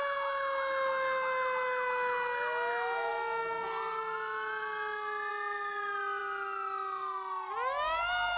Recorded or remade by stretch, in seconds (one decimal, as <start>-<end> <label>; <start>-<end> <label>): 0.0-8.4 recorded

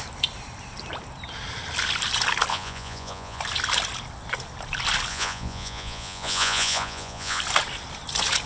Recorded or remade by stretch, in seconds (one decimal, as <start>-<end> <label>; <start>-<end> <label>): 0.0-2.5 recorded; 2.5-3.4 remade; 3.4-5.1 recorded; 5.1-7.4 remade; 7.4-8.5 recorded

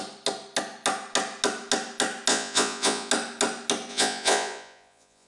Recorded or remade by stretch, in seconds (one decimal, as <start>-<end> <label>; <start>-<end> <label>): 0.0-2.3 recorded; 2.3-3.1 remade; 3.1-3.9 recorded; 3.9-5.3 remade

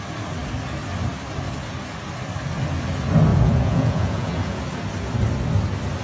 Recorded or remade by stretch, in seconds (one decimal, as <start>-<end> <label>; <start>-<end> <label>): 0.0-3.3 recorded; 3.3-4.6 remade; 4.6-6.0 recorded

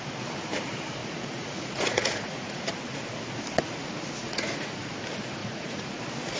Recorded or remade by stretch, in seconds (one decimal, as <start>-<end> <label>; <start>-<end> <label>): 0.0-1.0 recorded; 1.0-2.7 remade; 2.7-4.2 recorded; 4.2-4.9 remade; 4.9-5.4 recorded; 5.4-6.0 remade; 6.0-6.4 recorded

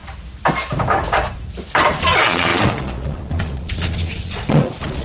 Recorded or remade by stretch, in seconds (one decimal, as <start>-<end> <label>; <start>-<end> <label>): 0.0-2.0 recorded; 2.0-5.0 remade

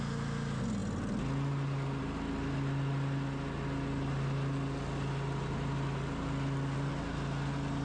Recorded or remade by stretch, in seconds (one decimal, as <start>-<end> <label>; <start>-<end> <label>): 0.0-7.8 recorded

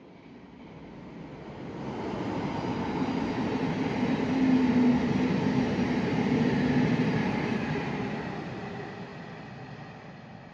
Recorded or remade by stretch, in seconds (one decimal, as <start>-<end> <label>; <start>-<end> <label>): 0.0-10.5 recorded